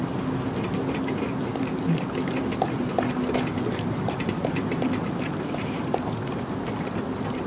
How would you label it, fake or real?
real